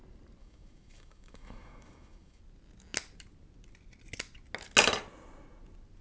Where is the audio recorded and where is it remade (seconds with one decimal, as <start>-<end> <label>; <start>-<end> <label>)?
0.0-0.4 recorded; 0.4-2.4 remade; 2.4-6.0 recorded